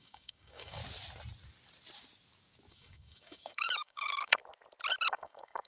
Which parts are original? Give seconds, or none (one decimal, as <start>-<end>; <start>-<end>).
0.8-2.7; 4.4-5.1